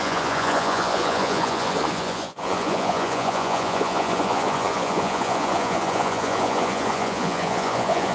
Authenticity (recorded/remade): remade